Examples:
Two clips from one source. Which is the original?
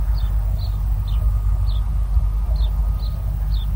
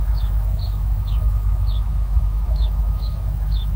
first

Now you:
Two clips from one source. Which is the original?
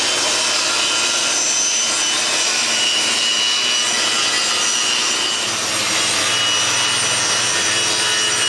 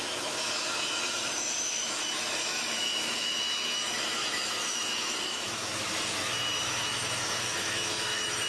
first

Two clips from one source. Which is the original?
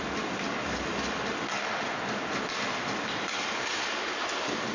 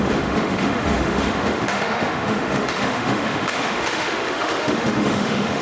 first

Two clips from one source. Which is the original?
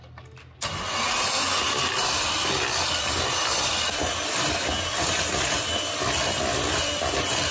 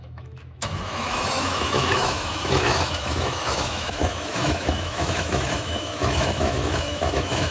first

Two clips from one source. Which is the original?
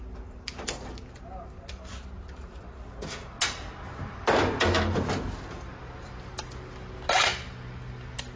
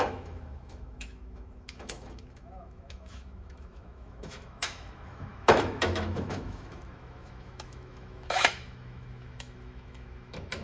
first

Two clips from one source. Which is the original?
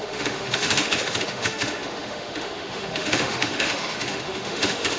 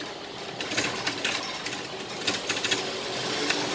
second